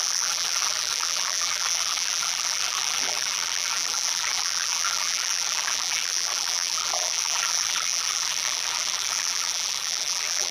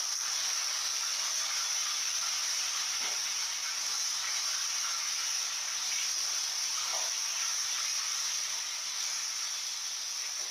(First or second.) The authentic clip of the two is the second